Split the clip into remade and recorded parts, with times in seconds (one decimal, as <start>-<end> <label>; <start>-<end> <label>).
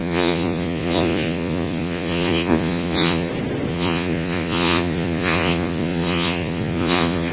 0.0-3.3 remade; 3.3-3.7 recorded; 3.7-7.3 remade